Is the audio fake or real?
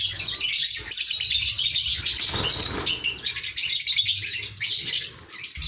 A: real